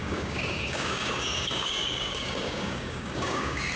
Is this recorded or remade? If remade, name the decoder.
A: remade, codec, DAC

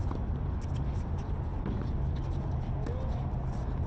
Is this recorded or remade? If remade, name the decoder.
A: recorded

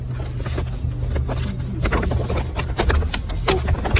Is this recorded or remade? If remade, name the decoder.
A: recorded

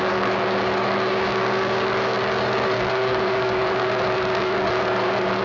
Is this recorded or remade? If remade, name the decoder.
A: remade, codec, DAC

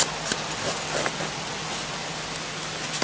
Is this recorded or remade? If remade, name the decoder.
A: recorded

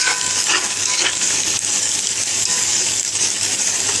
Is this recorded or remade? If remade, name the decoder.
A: remade, codec, DAC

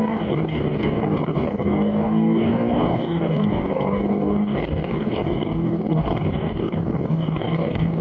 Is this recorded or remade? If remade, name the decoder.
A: remade, codec, DAC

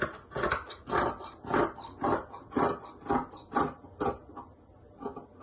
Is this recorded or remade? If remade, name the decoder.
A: recorded